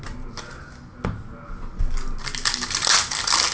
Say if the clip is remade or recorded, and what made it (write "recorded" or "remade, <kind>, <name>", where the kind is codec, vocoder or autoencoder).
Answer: recorded